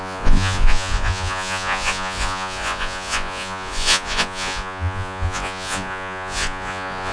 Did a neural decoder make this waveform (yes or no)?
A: yes